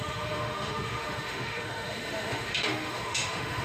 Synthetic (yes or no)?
yes